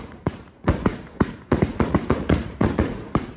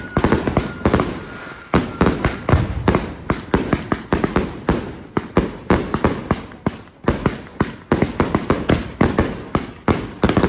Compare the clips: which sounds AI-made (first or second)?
first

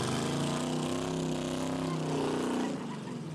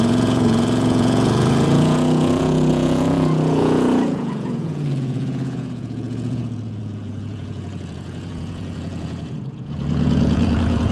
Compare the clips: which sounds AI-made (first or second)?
second